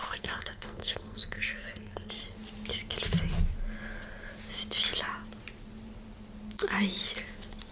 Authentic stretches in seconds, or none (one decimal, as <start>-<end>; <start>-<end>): 2.1-7.7